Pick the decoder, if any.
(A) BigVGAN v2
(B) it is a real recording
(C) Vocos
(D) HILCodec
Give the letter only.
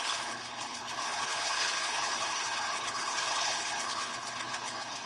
D